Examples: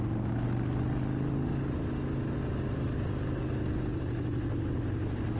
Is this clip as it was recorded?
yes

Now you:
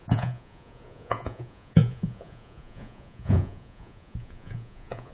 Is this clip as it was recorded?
no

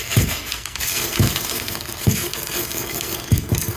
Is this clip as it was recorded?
no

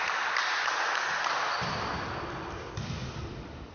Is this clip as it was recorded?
yes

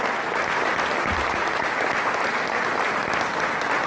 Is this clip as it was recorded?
yes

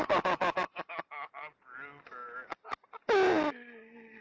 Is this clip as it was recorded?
yes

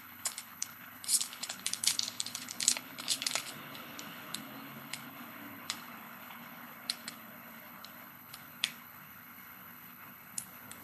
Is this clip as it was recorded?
no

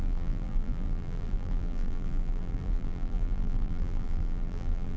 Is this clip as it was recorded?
no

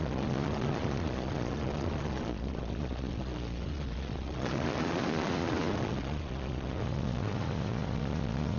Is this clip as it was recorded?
no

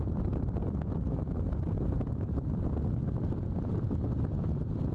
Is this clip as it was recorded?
yes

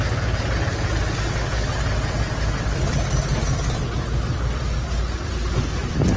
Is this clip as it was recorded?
yes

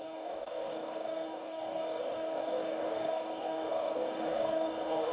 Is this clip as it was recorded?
no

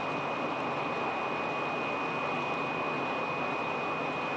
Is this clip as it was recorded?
yes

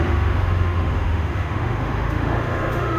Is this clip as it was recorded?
no